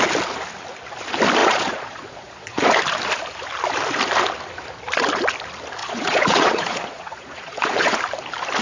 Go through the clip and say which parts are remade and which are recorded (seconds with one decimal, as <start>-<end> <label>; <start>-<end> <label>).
0.0-1.4 recorded; 1.4-2.6 remade; 2.6-5.8 recorded; 5.8-8.0 remade; 8.0-8.6 recorded

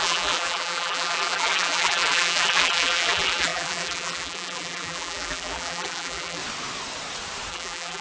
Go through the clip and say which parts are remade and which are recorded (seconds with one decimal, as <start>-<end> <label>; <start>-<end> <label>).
0.0-6.4 remade; 6.4-7.5 recorded; 7.5-8.0 remade

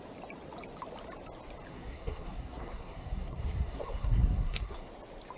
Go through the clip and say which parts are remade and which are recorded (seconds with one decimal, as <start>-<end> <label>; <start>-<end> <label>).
0.0-1.7 recorded; 1.7-4.9 remade; 4.9-5.4 recorded

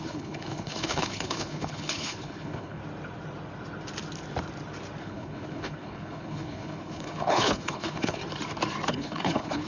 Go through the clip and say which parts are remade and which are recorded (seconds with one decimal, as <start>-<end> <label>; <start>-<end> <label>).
0.0-2.8 remade; 2.8-5.0 recorded; 5.0-8.2 remade; 8.2-8.9 recorded; 8.9-9.7 remade

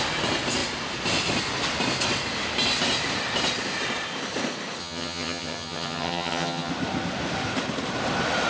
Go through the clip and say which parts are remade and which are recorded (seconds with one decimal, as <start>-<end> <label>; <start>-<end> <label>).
0.0-4.8 recorded; 4.8-6.7 remade; 6.7-8.5 recorded

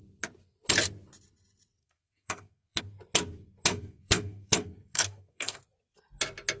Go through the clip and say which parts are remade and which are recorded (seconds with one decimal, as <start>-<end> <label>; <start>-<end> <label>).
0.0-1.8 recorded; 1.8-2.8 remade; 2.8-3.7 recorded; 3.7-5.6 remade; 5.6-6.6 recorded

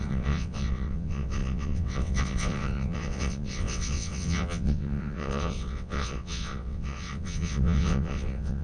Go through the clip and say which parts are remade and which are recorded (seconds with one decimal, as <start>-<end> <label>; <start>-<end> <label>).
0.0-8.6 remade